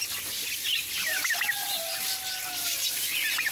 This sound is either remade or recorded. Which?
recorded